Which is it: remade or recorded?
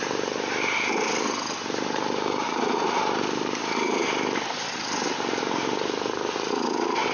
recorded